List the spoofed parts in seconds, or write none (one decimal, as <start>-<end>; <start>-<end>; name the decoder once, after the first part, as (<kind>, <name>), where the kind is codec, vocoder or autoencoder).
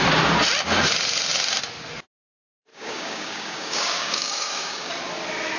2.7-4.9 (codec, DAC)